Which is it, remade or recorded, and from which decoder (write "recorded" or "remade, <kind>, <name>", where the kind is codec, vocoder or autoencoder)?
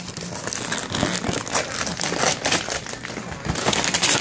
recorded